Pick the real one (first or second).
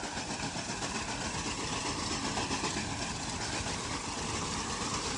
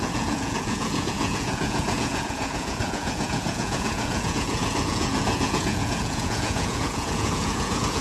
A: first